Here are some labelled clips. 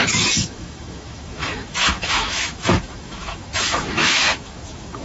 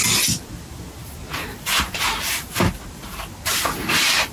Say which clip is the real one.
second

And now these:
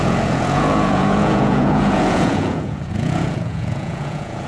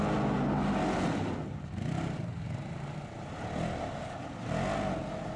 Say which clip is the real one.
second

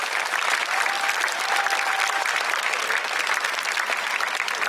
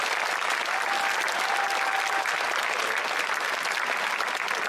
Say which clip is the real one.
second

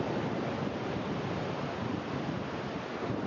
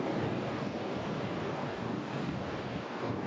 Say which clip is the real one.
first